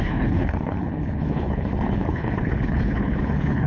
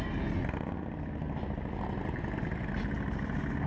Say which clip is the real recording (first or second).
second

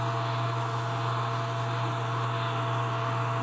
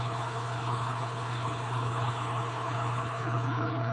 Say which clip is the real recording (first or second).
first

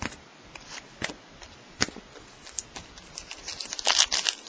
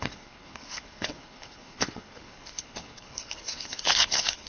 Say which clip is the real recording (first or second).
first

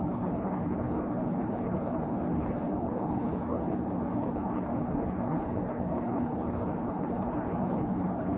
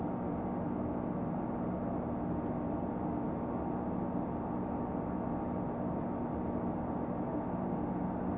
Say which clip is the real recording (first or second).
second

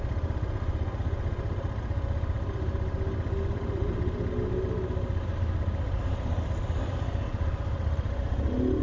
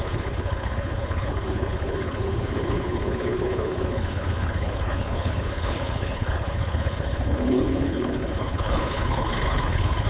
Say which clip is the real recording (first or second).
first